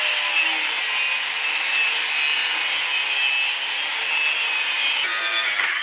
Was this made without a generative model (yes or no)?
yes